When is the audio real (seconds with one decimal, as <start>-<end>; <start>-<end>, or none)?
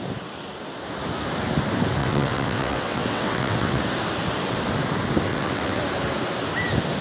0.0-2.0; 3.8-5.3; 5.8-7.0